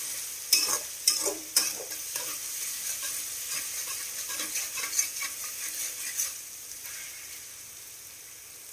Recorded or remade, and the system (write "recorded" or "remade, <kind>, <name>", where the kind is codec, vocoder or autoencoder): remade, vocoder, BigVGAN v2